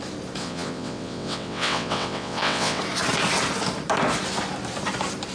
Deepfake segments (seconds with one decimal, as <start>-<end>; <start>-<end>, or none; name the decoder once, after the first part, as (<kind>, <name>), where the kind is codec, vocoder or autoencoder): 0.4-2.8 (vocoder, WaveNeXt)